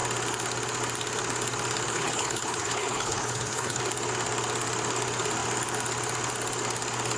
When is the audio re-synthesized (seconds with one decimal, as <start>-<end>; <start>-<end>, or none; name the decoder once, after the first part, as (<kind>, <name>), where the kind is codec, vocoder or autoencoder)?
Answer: 1.9-3.8 (codec, HILCodec)